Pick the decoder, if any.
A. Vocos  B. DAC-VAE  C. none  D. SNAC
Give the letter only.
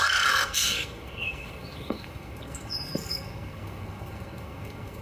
D